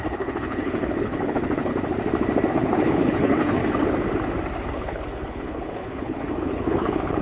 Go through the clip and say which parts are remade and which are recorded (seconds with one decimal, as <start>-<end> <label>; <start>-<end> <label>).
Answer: 0.0-1.7 remade; 1.7-2.5 recorded; 2.5-3.6 remade; 3.6-4.7 recorded; 4.7-7.2 remade